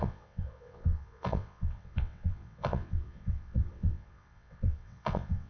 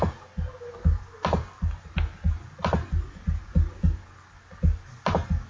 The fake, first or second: first